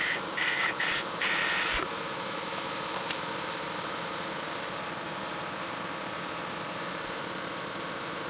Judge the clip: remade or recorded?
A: remade